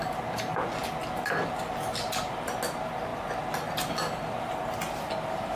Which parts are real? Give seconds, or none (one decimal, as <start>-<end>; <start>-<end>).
0.0-5.6